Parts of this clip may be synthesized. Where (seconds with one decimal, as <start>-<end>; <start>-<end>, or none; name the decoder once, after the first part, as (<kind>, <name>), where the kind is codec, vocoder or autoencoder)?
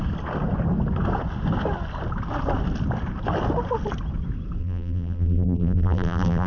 4.6-6.5 (vocoder, BigVGAN v2)